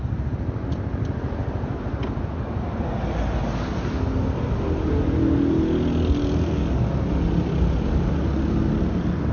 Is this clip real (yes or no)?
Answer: yes